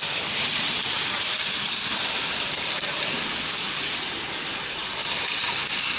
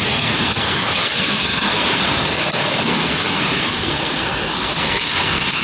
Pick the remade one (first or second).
second